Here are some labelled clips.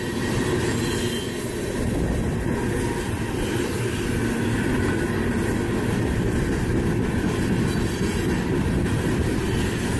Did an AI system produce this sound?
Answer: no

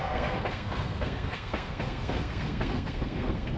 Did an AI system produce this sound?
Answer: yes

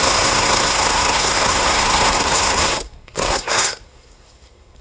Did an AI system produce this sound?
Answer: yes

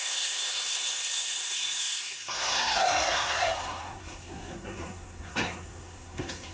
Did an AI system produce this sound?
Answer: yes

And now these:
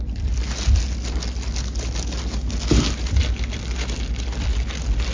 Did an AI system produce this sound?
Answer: no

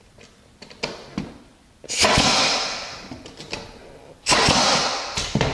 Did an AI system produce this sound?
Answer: no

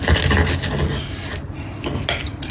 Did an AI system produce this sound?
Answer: no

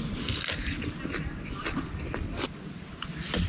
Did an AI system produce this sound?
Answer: no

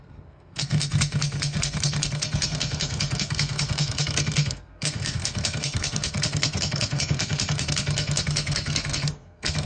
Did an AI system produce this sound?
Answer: yes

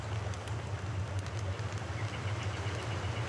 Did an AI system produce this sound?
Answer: no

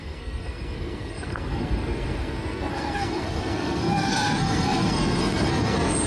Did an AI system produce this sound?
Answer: yes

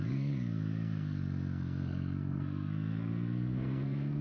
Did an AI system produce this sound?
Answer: yes